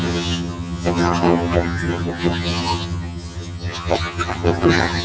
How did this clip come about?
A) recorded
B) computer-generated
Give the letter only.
B